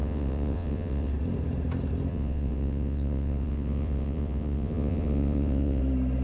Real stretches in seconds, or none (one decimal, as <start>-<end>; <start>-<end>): 1.1-2.1; 5.8-6.2